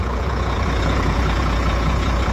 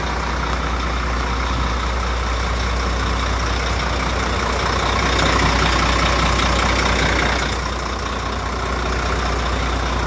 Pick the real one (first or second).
second